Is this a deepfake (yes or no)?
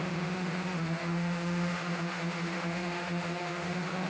yes